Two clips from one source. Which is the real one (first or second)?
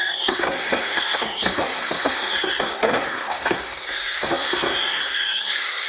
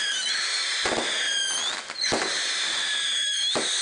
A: second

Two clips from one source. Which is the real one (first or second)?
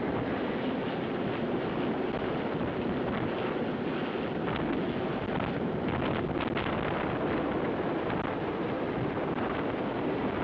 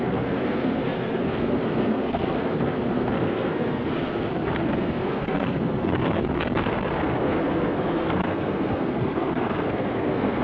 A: first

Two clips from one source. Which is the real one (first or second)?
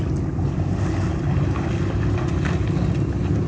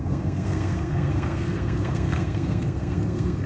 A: first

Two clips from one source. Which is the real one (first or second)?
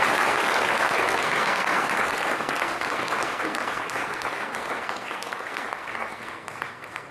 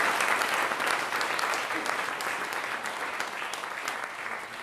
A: second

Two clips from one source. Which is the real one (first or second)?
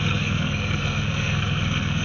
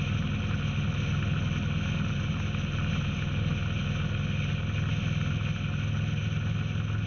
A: second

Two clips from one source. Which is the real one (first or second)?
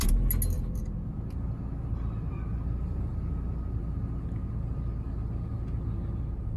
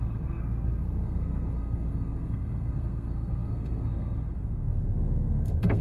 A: first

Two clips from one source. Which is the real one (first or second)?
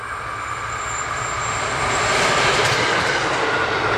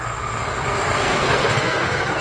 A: first